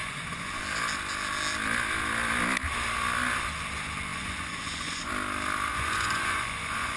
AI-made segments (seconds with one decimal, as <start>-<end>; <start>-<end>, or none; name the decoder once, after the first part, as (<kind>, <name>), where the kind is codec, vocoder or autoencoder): 0.0-0.6 (vocoder, Vocos); 4.1-5.1; 5.7-7.0